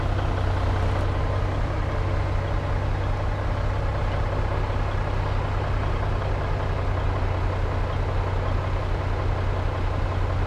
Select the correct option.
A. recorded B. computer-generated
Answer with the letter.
A